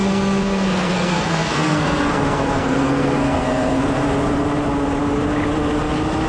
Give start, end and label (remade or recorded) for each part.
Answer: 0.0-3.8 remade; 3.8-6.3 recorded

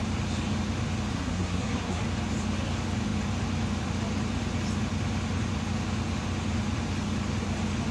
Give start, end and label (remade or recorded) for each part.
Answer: 0.0-1.1 recorded; 1.1-2.0 remade; 2.0-7.9 recorded

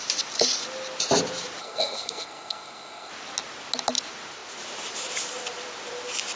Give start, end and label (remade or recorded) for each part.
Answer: 0.0-1.6 recorded; 1.6-3.1 remade; 3.1-6.4 recorded